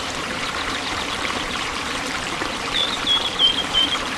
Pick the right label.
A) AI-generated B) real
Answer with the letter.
A